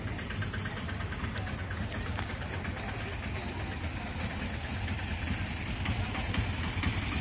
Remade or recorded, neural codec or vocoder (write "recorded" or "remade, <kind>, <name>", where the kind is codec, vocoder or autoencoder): recorded